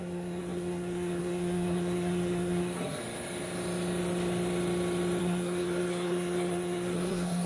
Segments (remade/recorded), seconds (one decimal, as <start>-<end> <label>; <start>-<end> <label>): 0.0-3.0 remade; 3.0-5.2 recorded; 5.2-7.5 remade